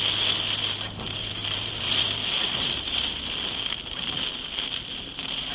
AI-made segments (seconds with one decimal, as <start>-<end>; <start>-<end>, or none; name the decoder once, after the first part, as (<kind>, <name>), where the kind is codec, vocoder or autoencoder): 1.4-4.0 (vocoder, BigVGAN v2)